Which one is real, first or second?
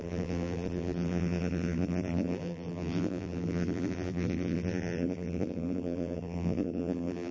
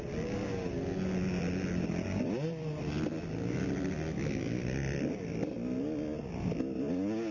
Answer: second